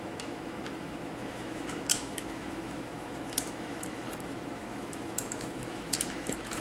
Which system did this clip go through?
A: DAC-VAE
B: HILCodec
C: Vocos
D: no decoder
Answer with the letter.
A